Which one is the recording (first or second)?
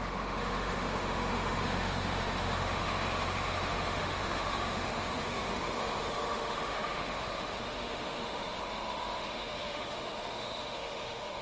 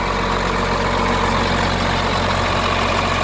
second